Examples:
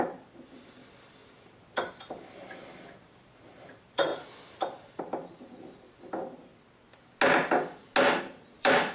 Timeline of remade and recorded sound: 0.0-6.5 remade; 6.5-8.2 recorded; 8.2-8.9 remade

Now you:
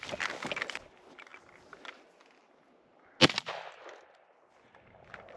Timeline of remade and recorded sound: 0.0-5.4 recorded

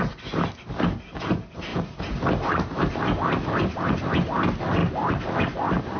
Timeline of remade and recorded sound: 0.0-1.7 recorded; 1.7-4.0 remade; 4.0-4.8 recorded; 4.8-6.0 remade

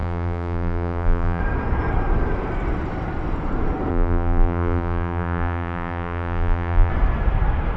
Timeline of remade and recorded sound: 0.0-1.4 remade; 1.4-3.9 recorded; 3.9-6.9 remade; 6.9-7.8 recorded

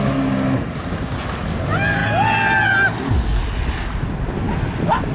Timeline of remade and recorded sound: 0.0-5.1 recorded

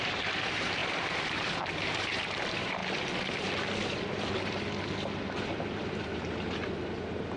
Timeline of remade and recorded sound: 0.0-2.8 remade; 2.8-7.4 recorded

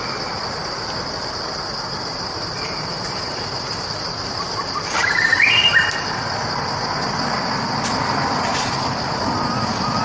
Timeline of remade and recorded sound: 0.0-2.1 recorded; 2.1-5.2 remade; 5.2-8.5 recorded; 8.5-9.2 remade; 9.2-10.0 recorded